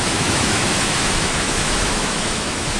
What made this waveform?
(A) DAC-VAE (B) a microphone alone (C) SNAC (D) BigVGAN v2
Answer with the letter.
A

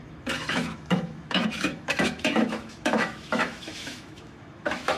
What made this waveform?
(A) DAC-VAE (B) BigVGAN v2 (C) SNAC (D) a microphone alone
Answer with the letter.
A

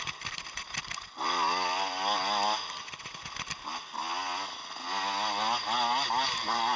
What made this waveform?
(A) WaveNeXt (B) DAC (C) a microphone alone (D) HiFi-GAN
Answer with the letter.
C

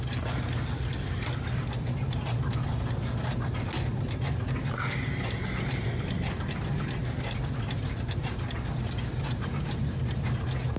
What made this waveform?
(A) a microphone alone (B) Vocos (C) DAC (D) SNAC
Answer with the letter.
A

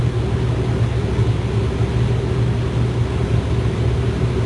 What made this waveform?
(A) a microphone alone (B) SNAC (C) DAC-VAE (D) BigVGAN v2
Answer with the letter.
A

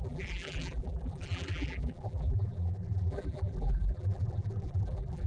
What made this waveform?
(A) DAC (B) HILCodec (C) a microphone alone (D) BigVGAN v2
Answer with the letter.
D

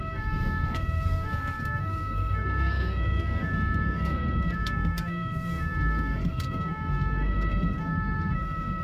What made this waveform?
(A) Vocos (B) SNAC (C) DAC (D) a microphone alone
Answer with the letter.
B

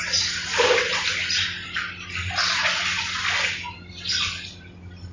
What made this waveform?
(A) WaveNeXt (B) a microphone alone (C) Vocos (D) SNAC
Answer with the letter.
B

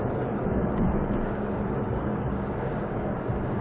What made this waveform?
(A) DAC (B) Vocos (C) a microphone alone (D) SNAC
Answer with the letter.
A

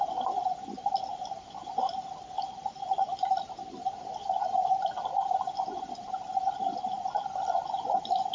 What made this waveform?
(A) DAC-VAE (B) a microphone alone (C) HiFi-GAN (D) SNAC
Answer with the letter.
B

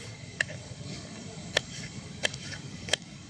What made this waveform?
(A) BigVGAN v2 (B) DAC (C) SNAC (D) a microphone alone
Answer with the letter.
B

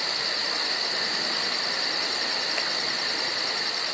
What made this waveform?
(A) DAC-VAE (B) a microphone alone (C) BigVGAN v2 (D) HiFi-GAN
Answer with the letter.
B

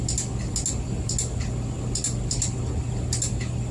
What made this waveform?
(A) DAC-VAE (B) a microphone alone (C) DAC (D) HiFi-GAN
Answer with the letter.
B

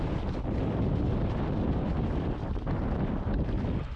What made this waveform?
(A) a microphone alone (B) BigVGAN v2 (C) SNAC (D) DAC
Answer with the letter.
A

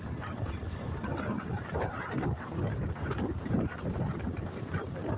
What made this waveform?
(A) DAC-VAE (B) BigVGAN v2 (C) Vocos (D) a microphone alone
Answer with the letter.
B